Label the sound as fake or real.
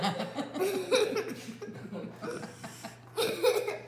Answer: real